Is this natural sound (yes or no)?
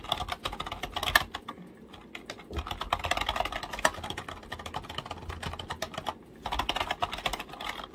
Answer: yes